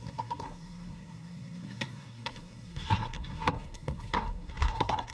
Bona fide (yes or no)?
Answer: no